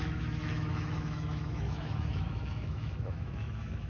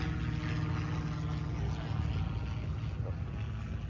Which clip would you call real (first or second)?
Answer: second